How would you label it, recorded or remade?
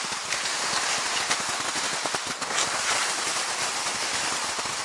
recorded